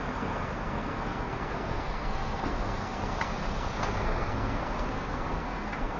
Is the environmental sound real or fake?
fake